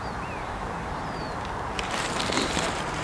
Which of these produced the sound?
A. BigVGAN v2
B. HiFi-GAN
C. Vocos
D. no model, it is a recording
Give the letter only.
A